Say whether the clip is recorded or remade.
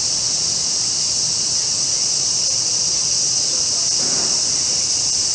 recorded